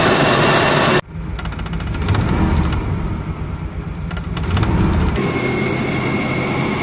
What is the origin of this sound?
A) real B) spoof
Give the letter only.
A